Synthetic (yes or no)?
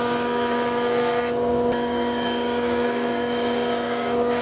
yes